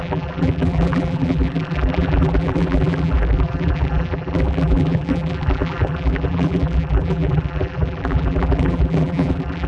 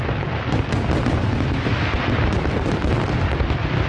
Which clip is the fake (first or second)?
first